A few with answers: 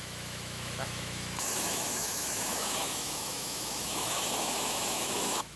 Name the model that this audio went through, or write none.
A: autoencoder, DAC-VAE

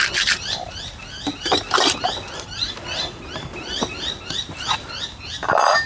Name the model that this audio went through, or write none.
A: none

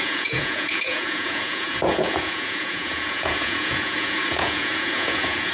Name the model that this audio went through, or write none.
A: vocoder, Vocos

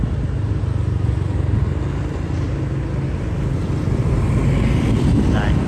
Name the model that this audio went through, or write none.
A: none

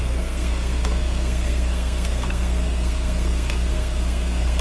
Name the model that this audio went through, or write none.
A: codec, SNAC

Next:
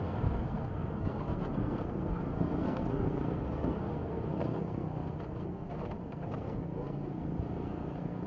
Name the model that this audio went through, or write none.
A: codec, SNAC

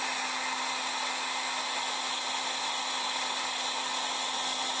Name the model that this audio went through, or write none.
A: none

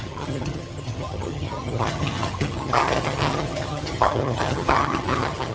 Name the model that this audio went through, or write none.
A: vocoder, HiFi-GAN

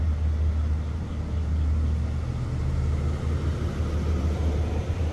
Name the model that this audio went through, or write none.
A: none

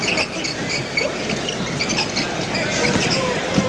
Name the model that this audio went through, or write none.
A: none